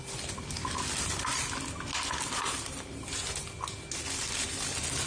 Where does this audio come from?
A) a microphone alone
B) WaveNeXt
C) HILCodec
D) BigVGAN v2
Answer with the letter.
A